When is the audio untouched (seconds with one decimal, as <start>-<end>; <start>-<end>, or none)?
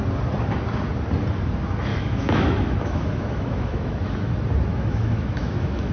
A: 0.0-1.9; 4.3-4.7